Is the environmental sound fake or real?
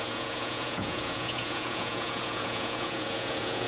fake